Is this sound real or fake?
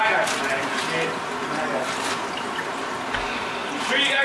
real